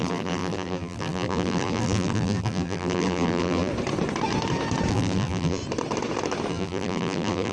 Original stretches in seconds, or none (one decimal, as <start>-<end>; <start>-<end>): 3.7-4.9; 5.6-6.5